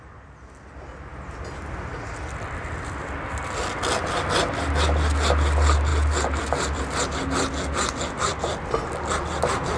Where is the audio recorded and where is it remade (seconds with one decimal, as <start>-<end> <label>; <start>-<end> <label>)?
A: 0.0-9.8 recorded

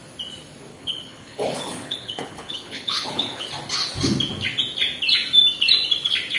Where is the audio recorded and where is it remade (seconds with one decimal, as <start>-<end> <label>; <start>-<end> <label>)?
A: 0.0-0.7 recorded; 0.7-3.5 remade; 3.5-6.4 recorded

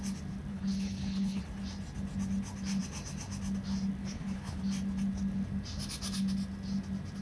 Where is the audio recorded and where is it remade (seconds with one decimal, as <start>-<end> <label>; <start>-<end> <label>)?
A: 0.0-0.5 recorded; 0.5-1.4 remade; 1.4-4.0 recorded; 4.0-4.6 remade; 4.6-7.2 recorded

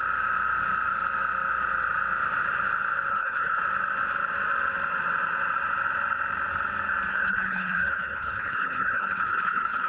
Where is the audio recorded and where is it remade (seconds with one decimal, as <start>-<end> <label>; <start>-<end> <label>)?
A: 0.0-3.1 recorded; 3.1-3.6 remade; 3.6-7.1 recorded; 7.1-9.9 remade

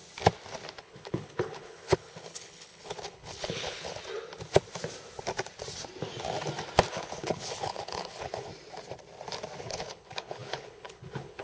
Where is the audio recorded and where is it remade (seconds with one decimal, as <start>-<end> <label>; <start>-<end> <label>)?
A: 0.0-0.8 recorded; 0.8-4.0 remade; 4.0-6.9 recorded; 6.9-8.5 remade; 8.5-9.6 recorded; 9.6-11.4 remade

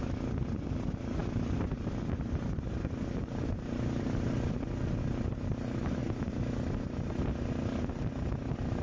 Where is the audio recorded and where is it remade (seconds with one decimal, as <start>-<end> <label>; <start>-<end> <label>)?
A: 0.0-8.8 recorded

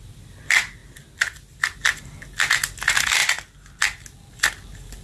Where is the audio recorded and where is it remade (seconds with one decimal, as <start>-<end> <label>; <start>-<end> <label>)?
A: 0.0-5.0 recorded